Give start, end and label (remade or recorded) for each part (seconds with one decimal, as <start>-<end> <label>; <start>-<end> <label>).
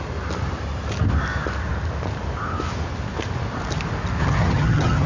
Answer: 0.0-4.2 recorded; 4.2-5.1 remade